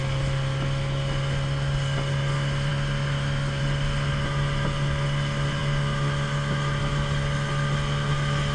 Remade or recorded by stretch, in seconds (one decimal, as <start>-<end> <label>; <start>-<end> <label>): 0.0-8.5 recorded